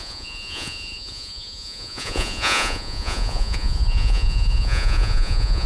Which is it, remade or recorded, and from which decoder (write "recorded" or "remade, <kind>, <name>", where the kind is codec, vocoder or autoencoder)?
remade, vocoder, Vocos